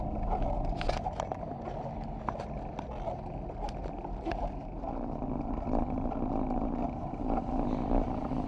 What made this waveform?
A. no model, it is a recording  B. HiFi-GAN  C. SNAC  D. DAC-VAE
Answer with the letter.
A